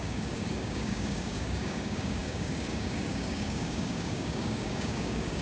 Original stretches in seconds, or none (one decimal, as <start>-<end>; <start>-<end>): none